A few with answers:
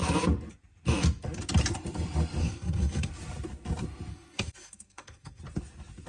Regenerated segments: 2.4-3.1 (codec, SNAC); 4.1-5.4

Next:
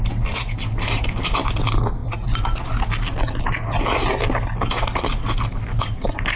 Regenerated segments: none

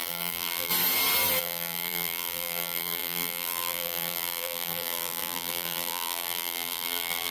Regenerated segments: 0.0-0.7 (vocoder, BigVGAN v2); 1.4-7.3

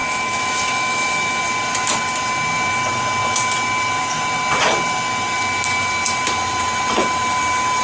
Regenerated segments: 0.0-1.4 (autoencoder, DAC-VAE)

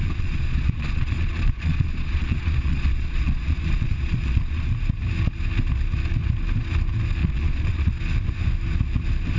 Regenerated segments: 0.0-4.7 (vocoder, Vocos); 7.2-7.9